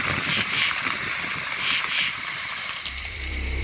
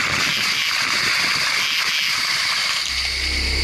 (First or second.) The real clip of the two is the second